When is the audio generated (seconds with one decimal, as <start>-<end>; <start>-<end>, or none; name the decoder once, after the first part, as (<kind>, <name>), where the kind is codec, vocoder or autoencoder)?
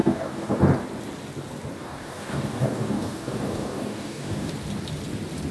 0.0-0.6 (codec, DAC); 1.8-4.5